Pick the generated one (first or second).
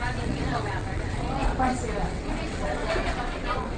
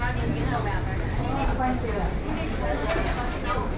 first